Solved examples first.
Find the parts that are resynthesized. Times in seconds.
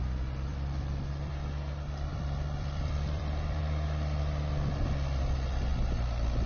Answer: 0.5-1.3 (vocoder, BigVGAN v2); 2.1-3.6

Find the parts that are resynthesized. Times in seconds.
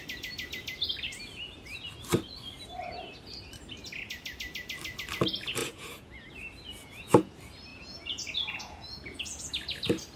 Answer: 5.6-6.3 (vocoder, Vocos); 6.8-7.3; 7.7-9.5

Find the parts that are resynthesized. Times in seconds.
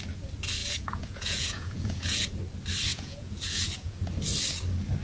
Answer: 0.6-2.4 (vocoder, Vocos); 2.9-4.0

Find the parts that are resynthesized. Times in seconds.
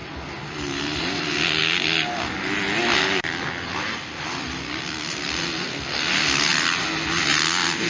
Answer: none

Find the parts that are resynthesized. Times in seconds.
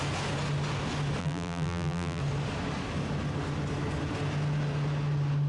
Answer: 1.2-2.2 (vocoder, BigVGAN v2)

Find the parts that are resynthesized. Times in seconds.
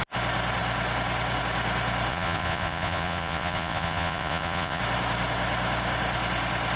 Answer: 2.1-4.8 (vocoder, Vocos)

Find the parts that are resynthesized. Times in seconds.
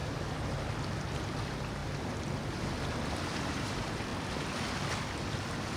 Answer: 0.0-1.8 (vocoder, BigVGAN v2); 3.5-5.8